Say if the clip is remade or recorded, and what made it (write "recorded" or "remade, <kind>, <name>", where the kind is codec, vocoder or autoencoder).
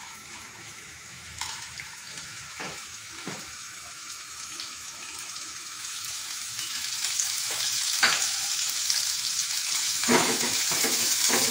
remade, autoencoder, DAC-VAE